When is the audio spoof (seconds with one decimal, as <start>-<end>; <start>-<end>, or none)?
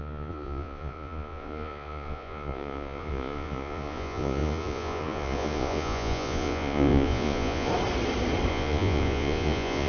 0.0-7.7; 8.5-9.9